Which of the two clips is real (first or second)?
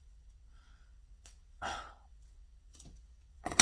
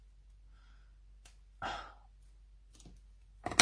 second